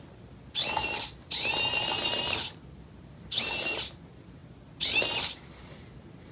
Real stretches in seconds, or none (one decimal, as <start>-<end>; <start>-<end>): 0.0-6.3